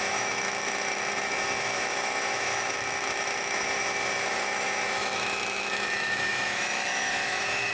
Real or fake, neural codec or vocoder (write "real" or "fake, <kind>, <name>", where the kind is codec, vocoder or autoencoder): fake, autoencoder, DAC-VAE